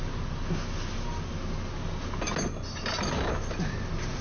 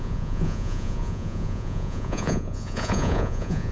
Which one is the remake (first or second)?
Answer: second